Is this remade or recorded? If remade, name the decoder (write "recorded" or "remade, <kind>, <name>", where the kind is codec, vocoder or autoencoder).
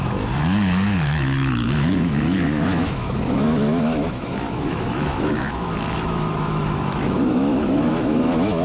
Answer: remade, autoencoder, DAC-VAE